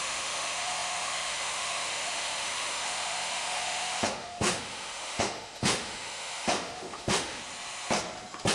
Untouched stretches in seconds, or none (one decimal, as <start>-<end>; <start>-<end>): 7.4-8.5